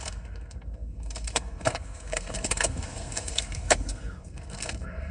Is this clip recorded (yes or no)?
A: no